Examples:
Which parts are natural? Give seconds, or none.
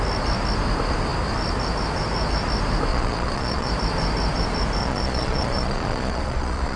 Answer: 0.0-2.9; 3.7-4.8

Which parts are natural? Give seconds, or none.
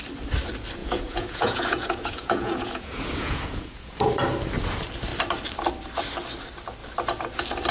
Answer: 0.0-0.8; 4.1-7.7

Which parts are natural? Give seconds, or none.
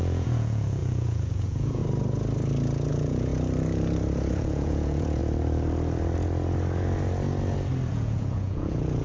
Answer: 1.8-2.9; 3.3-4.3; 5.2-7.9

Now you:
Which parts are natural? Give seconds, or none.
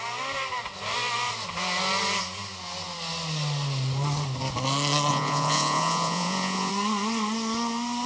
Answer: 0.0-5.1; 6.7-8.1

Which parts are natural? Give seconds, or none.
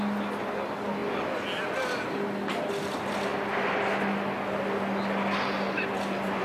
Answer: 0.0-6.4